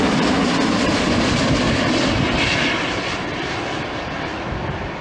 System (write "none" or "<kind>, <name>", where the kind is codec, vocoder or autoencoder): none